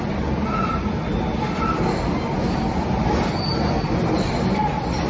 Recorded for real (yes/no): yes